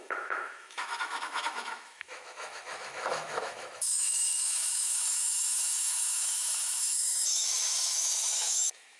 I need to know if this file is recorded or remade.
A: remade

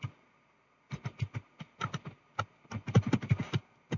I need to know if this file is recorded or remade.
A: recorded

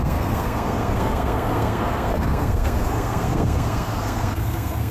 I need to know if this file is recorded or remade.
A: remade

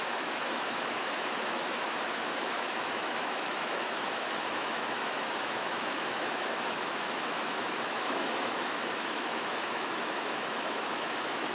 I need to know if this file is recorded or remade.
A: remade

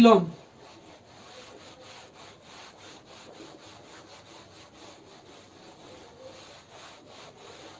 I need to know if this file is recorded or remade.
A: recorded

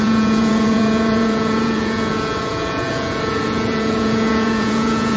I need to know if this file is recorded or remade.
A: remade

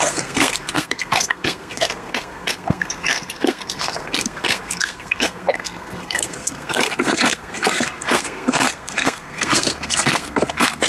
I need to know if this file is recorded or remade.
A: remade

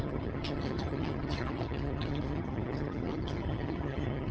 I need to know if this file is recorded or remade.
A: remade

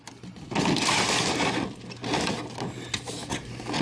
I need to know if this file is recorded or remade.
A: recorded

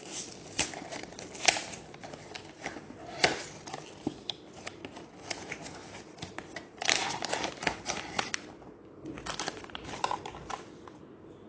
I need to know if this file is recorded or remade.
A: recorded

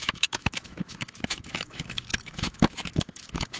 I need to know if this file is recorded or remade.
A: remade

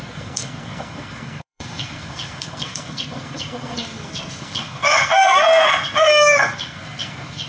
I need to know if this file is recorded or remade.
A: remade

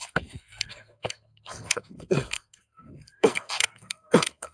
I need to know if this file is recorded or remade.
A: remade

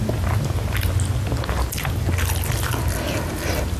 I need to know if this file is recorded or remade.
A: recorded